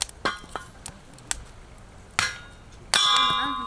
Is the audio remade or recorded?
recorded